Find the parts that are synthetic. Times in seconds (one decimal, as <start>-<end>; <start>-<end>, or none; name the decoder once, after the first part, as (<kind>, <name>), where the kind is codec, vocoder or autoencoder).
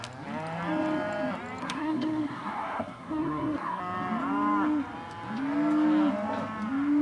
1.6-3.8 (codec, SNAC)